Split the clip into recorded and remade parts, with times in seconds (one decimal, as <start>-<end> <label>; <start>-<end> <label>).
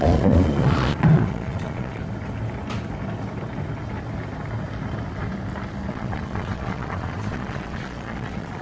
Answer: 0.0-2.0 remade; 2.0-5.9 recorded; 5.9-8.6 remade